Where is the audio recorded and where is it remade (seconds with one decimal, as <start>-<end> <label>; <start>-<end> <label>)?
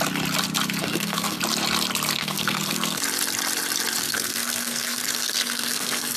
0.0-0.8 recorded; 0.8-1.4 remade; 1.4-2.2 recorded; 2.2-3.0 remade; 3.0-4.0 recorded; 4.0-6.2 remade